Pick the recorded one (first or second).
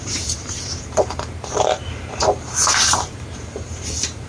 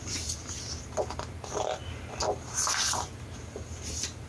second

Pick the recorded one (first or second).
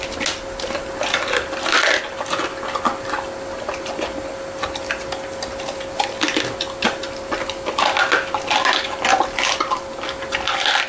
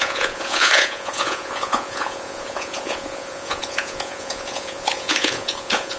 first